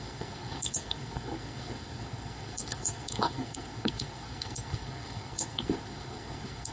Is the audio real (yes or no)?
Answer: no